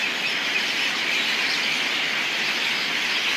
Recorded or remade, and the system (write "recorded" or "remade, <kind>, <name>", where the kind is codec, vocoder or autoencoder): recorded